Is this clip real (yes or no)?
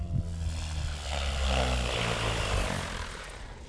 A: yes